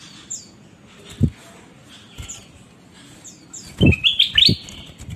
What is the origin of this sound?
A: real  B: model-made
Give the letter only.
A